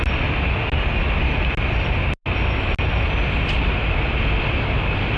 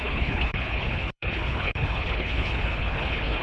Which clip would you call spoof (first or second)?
second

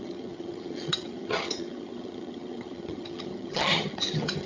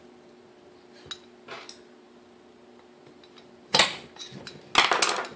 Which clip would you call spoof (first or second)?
first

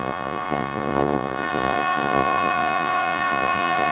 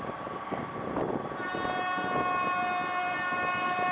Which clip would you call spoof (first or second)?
first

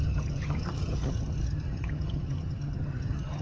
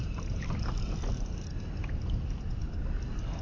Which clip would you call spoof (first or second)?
first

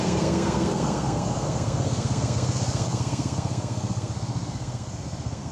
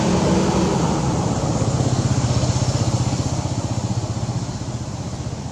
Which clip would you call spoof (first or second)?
first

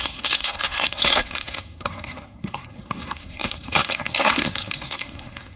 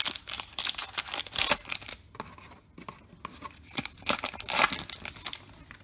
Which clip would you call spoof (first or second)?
first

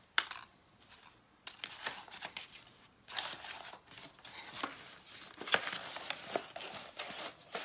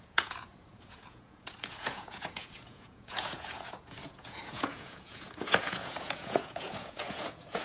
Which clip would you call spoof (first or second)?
second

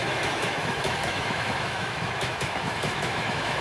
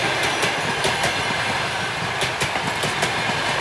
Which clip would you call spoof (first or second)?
first